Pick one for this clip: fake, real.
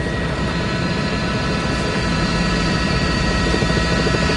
fake